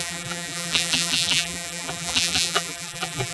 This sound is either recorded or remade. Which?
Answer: remade